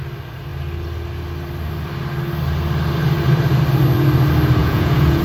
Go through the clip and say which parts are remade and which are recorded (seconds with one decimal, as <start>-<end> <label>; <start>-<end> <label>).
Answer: 0.0-4.6 recorded; 4.6-5.2 remade